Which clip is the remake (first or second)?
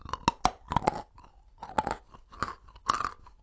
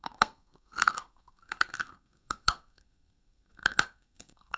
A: second